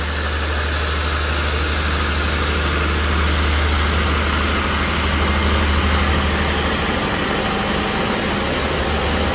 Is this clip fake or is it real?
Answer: real